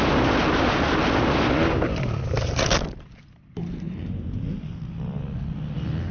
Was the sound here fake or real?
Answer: real